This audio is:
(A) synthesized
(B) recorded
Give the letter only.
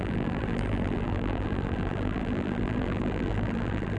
A